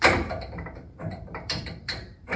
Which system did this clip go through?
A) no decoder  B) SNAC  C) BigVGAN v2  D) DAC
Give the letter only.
C